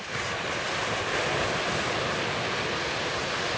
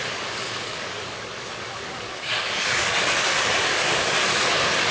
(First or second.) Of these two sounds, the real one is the first